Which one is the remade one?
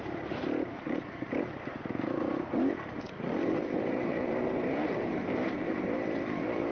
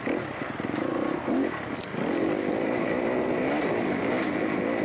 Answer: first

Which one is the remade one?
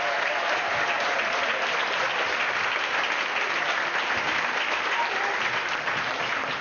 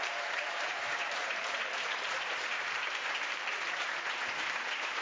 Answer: second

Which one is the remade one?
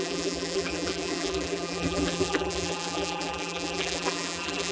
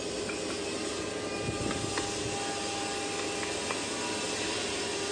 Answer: first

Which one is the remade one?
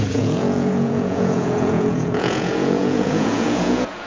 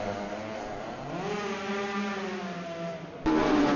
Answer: first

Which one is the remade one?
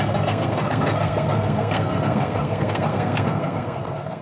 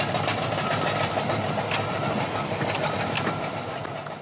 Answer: first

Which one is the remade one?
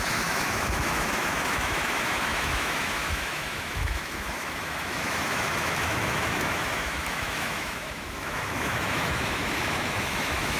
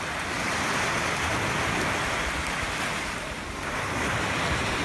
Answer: first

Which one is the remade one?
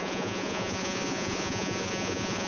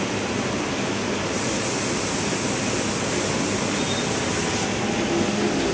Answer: first